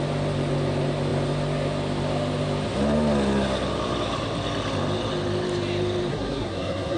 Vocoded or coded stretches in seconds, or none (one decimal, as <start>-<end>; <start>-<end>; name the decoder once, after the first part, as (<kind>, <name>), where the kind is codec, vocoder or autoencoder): 6.1-7.0 (codec, SNAC)